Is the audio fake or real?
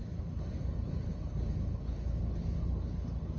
real